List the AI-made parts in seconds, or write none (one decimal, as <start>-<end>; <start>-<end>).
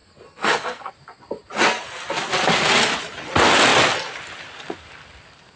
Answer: 0.0-0.9